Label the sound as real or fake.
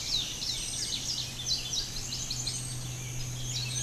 real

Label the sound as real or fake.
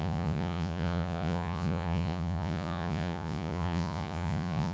fake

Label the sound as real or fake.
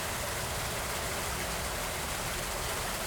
real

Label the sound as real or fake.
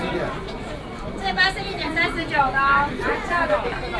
real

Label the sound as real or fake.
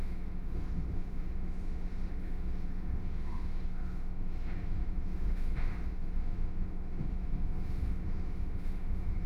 fake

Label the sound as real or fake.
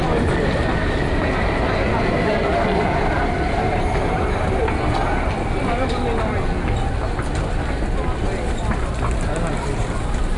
real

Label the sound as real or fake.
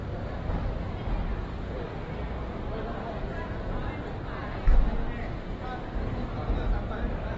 real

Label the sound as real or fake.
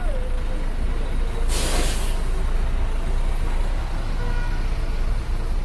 real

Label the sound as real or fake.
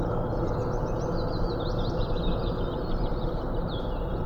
real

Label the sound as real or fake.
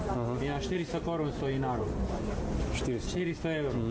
real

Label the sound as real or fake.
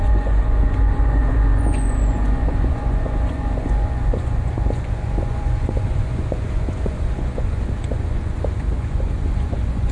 fake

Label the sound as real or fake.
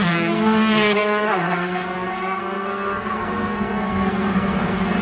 fake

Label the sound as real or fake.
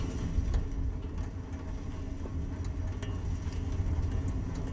real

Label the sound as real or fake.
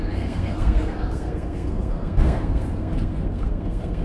fake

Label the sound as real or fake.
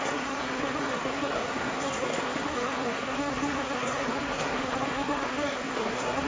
fake